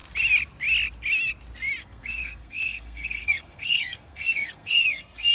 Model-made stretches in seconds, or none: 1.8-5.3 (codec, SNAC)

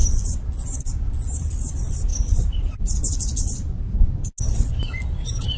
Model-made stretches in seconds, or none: none

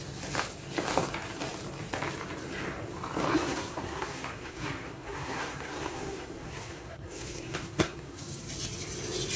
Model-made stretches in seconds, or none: 3.3-8.5 (codec, SNAC)

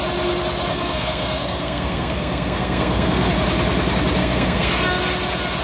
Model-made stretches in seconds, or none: 0.7-3.3 (codec, SNAC); 4.2-4.8

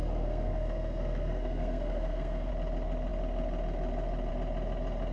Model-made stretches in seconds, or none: 0.0-2.5 (codec, SNAC)

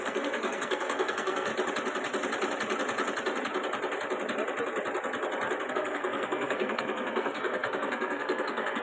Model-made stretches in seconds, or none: 0.0-1.5 (codec, SNAC); 5.7-8.8

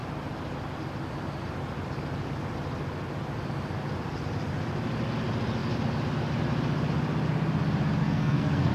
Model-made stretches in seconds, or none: 8.0-8.7 (codec, SNAC)